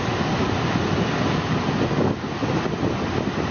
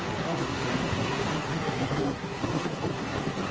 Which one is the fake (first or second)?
second